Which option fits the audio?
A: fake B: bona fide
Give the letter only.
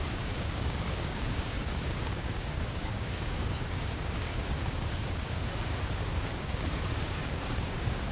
A